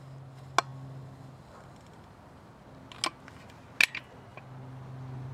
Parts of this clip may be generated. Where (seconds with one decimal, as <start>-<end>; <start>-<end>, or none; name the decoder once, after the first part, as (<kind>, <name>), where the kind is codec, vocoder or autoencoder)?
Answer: none